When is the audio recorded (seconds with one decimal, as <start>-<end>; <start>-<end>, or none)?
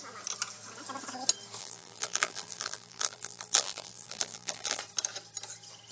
0.0-1.6; 4.8-5.9